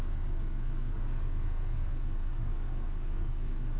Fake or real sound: fake